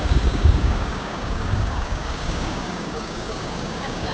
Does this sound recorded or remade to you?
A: remade